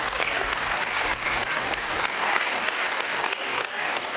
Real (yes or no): no